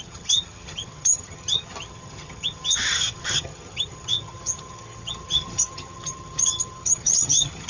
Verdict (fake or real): fake